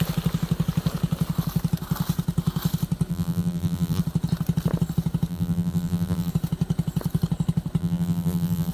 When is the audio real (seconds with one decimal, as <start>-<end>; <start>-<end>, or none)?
0.0-3.1; 4.0-5.3; 6.3-7.8